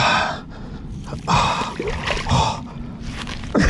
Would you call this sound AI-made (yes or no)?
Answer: yes